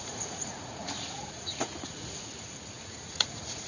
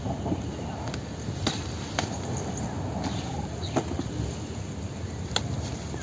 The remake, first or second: first